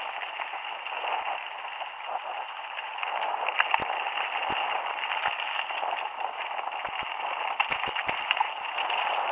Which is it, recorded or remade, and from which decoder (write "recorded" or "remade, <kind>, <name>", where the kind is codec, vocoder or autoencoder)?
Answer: recorded